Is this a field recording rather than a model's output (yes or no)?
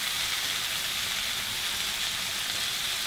yes